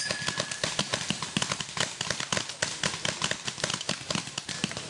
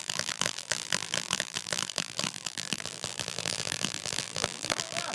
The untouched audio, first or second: first